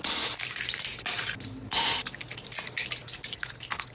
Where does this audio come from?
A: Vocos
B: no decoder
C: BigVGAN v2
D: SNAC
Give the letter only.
B